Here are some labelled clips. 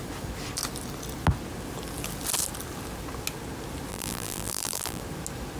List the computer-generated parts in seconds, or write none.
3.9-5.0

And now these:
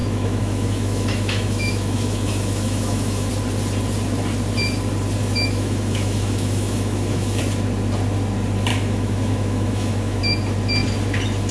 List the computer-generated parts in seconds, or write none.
0.0-3.3; 5.2-7.4; 8.7-10.2

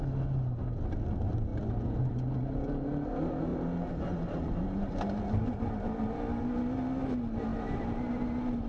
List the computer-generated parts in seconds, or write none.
3.5-6.6; 7.5-8.7

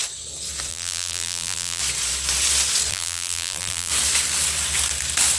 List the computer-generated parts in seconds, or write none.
0.7-1.8; 2.9-3.9

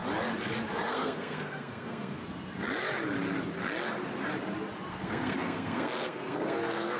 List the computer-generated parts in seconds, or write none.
0.9-2.2; 4.9-7.0

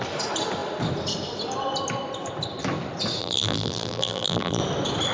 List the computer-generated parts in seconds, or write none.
3.2-4.6

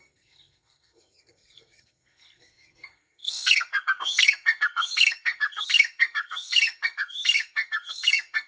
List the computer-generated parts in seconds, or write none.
0.0-8.5

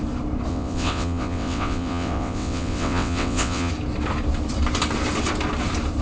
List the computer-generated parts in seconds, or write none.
0.5-3.7